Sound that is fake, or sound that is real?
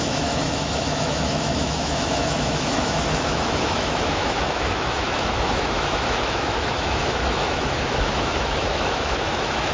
fake